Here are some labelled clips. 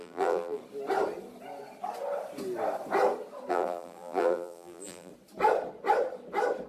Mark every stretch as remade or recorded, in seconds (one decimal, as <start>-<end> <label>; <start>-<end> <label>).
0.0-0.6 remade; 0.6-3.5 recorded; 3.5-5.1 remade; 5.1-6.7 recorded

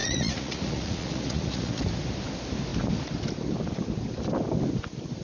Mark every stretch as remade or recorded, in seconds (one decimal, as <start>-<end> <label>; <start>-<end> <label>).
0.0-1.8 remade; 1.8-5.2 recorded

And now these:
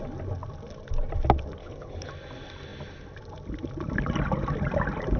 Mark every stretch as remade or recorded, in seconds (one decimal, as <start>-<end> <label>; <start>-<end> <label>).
0.0-1.6 recorded; 1.6-2.1 remade; 2.1-5.2 recorded